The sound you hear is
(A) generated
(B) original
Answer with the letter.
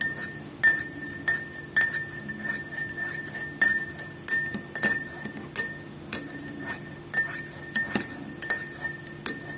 B